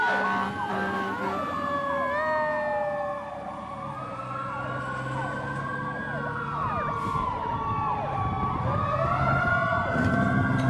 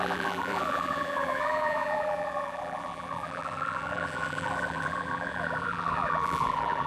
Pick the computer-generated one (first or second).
second